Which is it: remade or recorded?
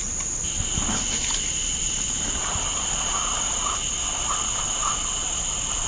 recorded